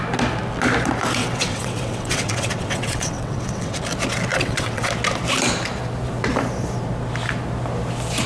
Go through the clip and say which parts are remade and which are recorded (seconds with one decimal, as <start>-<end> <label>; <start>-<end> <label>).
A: 0.0-1.2 recorded; 1.2-3.8 remade; 3.8-4.3 recorded; 4.3-4.9 remade; 4.9-8.3 recorded